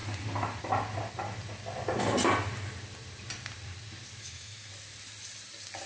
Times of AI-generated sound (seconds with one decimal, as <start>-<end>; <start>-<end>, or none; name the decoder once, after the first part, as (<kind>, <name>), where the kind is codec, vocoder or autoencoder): 4.2-4.7 (autoencoder, DAC-VAE)